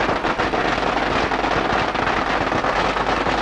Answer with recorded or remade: recorded